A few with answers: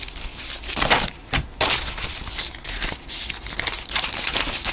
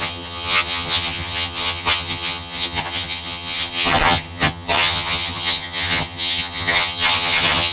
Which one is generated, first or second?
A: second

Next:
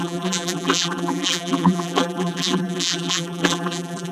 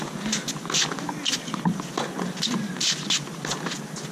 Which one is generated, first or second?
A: first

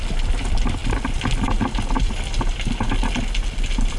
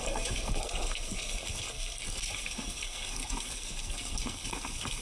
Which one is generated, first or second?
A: second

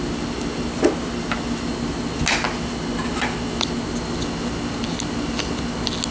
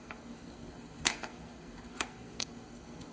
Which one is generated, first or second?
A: second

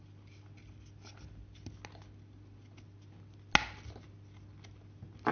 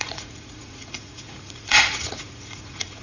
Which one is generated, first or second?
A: second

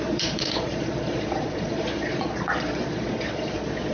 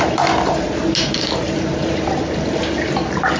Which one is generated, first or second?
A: first